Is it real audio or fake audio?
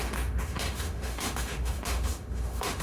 fake